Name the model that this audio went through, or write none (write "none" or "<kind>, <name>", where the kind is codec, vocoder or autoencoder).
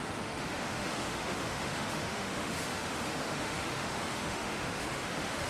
autoencoder, DAC-VAE